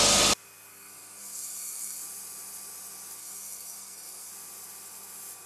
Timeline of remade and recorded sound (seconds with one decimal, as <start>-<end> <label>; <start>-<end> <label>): 0.0-0.7 recorded; 0.7-2.0 remade; 2.0-3.2 recorded; 3.2-4.3 remade; 4.3-5.5 recorded